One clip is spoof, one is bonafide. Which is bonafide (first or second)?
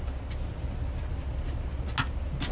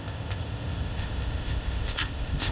first